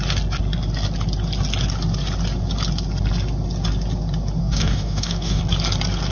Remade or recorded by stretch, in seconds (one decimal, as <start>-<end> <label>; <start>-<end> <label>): 0.0-4.4 recorded; 4.4-5.4 remade; 5.4-6.1 recorded

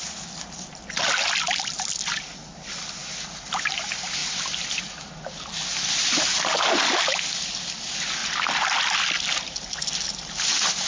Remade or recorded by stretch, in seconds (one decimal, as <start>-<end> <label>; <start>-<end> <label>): 0.0-10.9 recorded

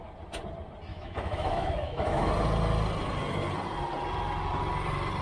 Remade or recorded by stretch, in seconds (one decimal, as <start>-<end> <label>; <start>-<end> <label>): 0.0-0.9 recorded; 0.9-2.3 remade; 2.3-5.2 recorded

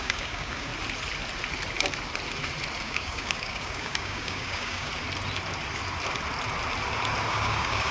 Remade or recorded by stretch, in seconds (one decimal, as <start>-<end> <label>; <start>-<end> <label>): 0.0-0.7 remade; 0.7-2.8 recorded; 2.8-4.9 remade; 4.9-7.3 recorded; 7.3-7.9 remade

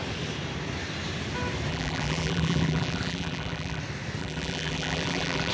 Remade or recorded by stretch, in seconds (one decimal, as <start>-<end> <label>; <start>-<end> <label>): 0.0-1.7 recorded; 1.7-3.8 remade; 3.8-4.2 recorded; 4.2-5.5 remade

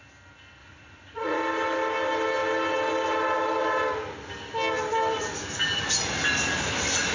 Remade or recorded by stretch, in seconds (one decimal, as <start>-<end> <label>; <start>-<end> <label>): 0.0-0.6 recorded; 0.6-1.4 remade; 1.4-7.1 recorded